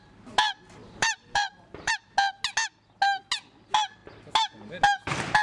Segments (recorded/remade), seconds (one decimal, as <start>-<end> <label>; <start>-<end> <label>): 0.0-0.8 recorded; 0.8-1.9 remade; 1.9-5.4 recorded

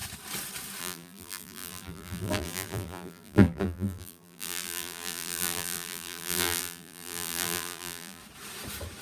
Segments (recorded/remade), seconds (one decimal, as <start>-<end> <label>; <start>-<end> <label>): 0.0-0.8 recorded; 0.8-8.2 remade; 8.2-9.0 recorded